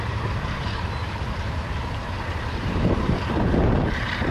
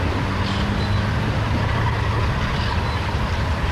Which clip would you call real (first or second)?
second